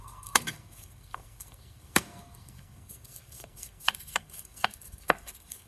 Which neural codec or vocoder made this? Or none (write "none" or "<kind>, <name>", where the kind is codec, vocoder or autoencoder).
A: codec, SNAC